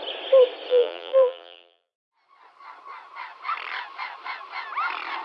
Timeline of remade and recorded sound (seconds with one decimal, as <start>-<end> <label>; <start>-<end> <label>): 0.0-0.7 recorded; 0.7-1.9 remade; 1.9-5.2 recorded